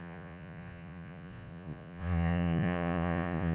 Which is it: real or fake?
fake